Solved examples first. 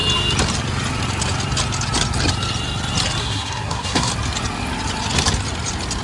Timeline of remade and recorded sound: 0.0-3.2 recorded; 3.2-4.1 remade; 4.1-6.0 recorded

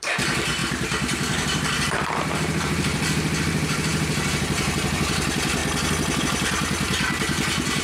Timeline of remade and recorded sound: 0.0-5.6 remade; 5.6-6.2 recorded; 6.2-7.8 remade